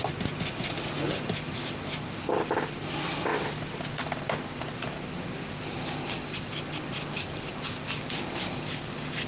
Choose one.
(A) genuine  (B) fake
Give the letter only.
A